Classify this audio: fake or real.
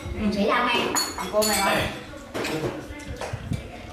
real